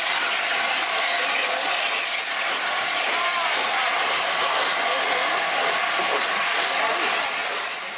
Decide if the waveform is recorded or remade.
recorded